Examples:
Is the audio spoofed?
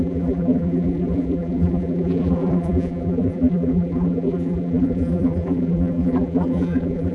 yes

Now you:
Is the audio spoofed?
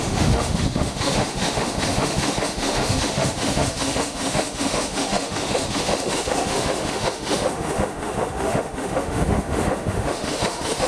yes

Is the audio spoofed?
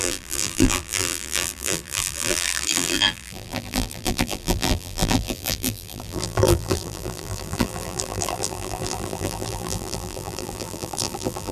yes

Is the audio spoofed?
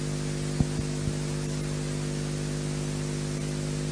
no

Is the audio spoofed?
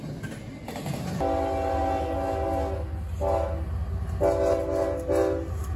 no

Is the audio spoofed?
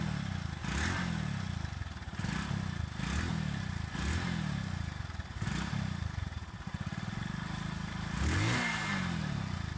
no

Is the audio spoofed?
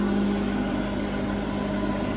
no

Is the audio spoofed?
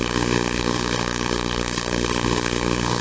yes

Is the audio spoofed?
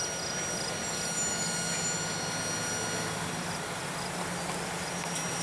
no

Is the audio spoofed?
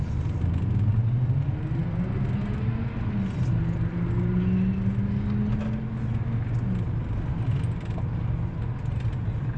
no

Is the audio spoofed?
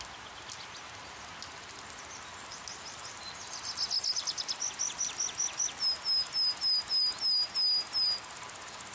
no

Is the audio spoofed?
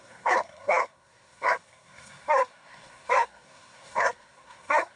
yes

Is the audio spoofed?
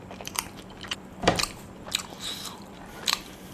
yes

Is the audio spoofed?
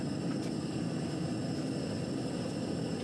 no